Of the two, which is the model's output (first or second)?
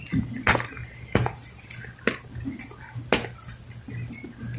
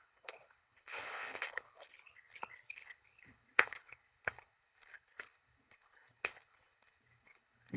second